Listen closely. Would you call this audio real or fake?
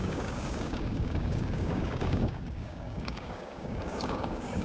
fake